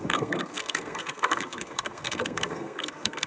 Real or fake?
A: fake